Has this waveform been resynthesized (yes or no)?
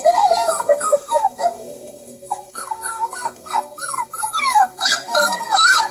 yes